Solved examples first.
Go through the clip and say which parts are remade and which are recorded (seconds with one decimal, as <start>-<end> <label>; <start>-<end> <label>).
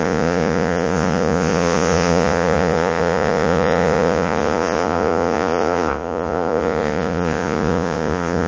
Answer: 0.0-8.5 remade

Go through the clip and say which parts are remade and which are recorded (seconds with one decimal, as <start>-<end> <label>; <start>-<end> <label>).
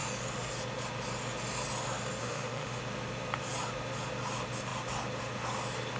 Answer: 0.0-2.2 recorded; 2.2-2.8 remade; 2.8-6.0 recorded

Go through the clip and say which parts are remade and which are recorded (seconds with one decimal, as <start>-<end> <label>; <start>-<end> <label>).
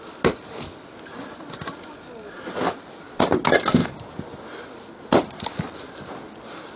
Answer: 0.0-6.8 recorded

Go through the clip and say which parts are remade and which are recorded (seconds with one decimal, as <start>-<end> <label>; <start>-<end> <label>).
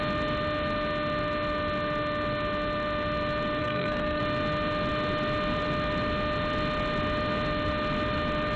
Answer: 0.0-3.6 recorded; 3.6-4.2 remade; 4.2-8.6 recorded